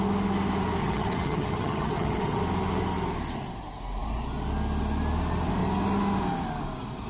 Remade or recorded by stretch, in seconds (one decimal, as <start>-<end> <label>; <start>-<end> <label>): 0.0-0.8 recorded; 0.8-2.4 remade; 2.4-7.1 recorded